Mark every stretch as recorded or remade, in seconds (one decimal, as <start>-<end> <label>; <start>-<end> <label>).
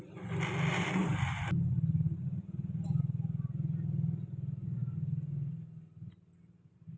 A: 0.0-7.0 recorded